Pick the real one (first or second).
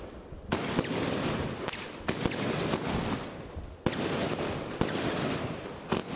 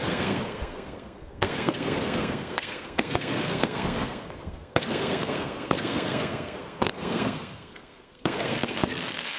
first